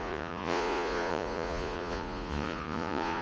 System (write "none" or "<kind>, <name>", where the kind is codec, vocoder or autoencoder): vocoder, Vocos